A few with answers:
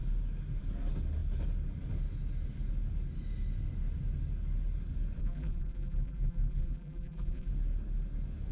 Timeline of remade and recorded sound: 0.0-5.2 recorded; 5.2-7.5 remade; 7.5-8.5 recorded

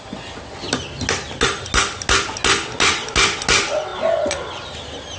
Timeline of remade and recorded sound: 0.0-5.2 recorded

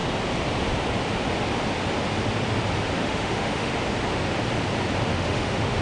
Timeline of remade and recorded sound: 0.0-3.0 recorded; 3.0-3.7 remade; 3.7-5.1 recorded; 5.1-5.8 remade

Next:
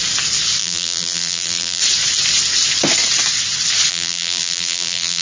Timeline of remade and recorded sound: 0.0-0.6 recorded; 0.6-1.8 remade; 1.8-3.9 recorded; 3.9-5.2 remade

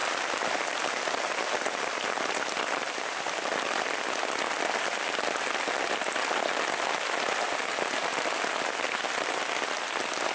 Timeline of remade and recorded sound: 0.0-10.3 recorded

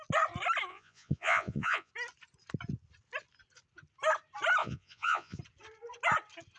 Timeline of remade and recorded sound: 0.0-0.7 recorded; 0.7-1.9 remade; 1.9-4.6 recorded; 4.6-5.4 remade; 5.4-6.6 recorded